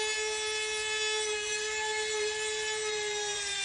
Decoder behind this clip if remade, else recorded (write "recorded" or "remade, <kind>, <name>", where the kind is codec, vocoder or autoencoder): remade, vocoder, BigVGAN v2